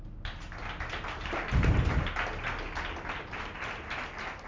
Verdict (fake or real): real